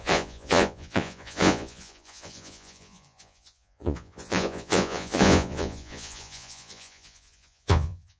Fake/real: fake